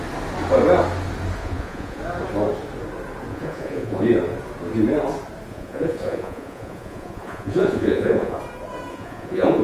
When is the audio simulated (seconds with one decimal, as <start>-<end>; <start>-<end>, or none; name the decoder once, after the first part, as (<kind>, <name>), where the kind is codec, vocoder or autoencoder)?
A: 1.4-2.0 (vocoder, Vocos); 3.3-4.0; 5.5-8.4; 8.9-9.6